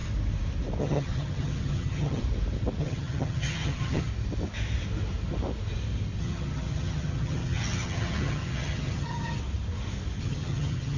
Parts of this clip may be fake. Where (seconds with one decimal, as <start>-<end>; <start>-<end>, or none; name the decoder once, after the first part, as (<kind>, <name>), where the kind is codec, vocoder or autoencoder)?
0.8-2.2 (vocoder, HiFi-GAN); 2.8-4.1; 6.2-9.4; 10.2-11.0